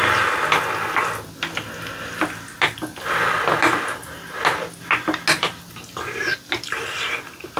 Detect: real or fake real